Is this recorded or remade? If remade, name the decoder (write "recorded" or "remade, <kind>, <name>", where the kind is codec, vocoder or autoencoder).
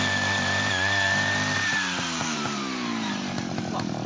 remade, vocoder, BigVGAN v2